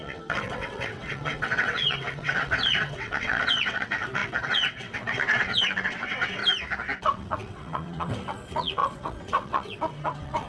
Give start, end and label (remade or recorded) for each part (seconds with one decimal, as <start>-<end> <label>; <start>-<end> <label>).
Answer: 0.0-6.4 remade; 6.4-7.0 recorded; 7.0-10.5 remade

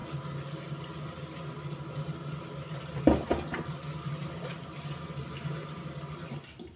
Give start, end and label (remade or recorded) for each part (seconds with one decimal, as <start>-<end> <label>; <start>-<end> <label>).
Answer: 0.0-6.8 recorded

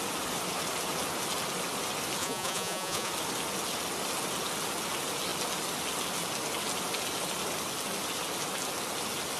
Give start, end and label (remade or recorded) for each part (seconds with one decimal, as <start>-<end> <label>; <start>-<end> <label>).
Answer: 0.0-2.2 recorded; 2.2-3.1 remade; 3.1-9.4 recorded

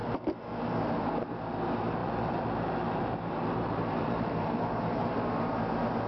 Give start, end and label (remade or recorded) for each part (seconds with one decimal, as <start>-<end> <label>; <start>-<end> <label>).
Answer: 0.0-2.0 recorded; 2.0-4.6 remade; 4.6-6.1 recorded